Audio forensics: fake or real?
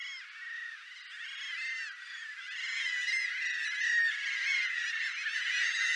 real